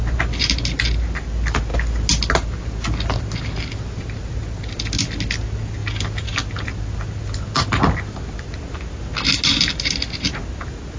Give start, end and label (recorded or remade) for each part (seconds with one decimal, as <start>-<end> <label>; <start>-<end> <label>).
0.0-11.0 recorded